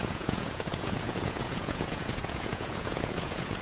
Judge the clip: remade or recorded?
remade